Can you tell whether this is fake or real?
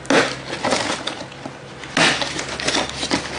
real